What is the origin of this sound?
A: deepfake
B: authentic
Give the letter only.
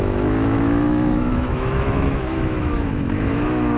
A